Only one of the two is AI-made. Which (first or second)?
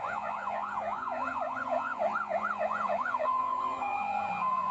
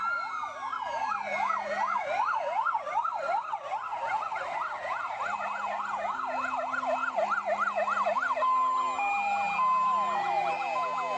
first